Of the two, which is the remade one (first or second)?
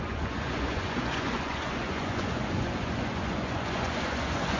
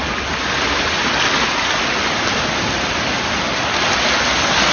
first